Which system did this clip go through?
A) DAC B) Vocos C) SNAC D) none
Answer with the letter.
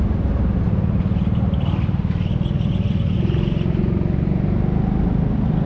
D